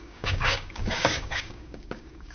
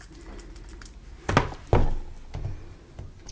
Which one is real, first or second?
second